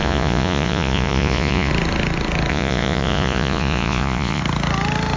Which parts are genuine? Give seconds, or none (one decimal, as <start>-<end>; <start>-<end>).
1.7-2.5; 4.4-5.2